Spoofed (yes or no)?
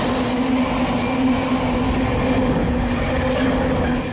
no